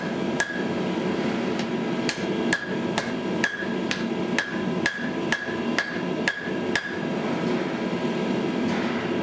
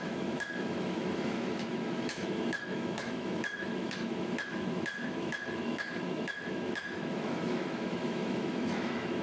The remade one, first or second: second